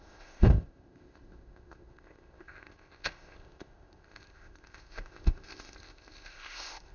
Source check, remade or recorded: remade